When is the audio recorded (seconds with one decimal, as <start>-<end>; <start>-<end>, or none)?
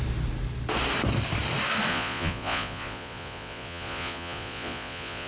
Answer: 0.0-1.9